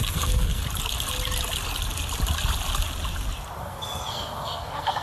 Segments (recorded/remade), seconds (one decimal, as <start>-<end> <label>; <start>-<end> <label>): 0.0-0.6 remade; 0.6-3.6 recorded; 3.6-5.0 remade